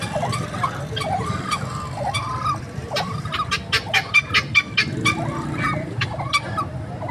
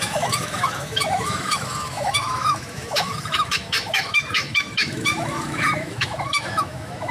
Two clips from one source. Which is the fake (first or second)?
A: second